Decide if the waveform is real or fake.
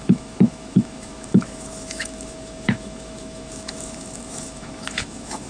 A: fake